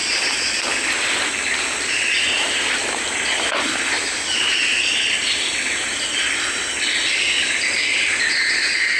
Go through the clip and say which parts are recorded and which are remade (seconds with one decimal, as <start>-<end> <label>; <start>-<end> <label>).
0.0-9.0 recorded